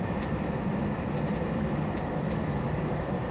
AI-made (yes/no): no